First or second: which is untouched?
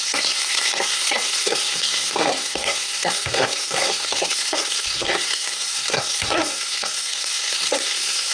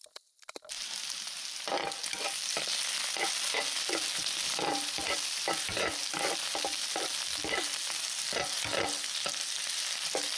second